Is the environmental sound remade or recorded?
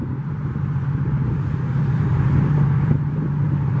remade